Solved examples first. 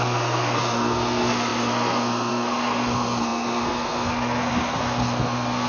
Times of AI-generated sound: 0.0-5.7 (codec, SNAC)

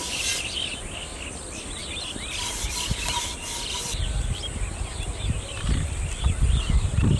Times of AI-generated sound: none

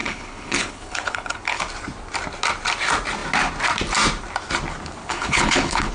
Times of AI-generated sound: 0.0-1.6 (codec, HILCodec); 5.0-5.9

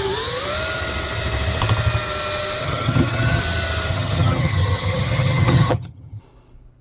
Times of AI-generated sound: 2.6-3.4 (vocoder, HiFi-GAN); 3.9-6.2

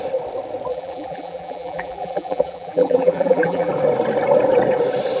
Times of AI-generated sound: 0.7-3.7 (vocoder, BigVGAN v2)

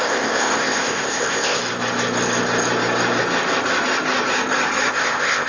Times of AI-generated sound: 0.0-1.6 (codec, ZipCodec); 4.9-5.5